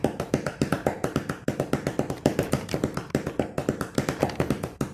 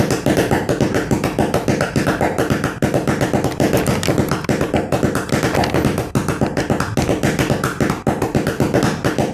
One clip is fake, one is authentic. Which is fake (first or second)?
first